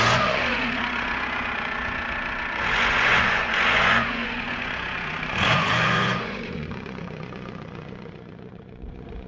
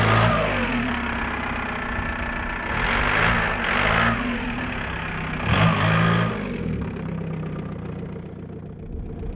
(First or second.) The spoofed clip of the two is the first